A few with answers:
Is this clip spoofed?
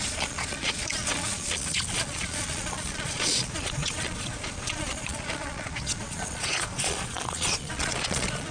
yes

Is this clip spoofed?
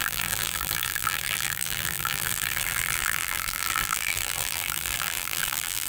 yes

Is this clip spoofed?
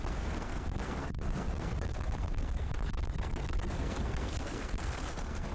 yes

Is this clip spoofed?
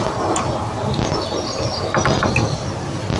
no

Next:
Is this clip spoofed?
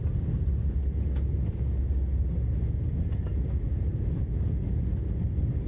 no